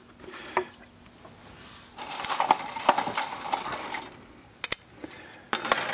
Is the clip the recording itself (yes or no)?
yes